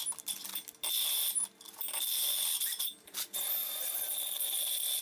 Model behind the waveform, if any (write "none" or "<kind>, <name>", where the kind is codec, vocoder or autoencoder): none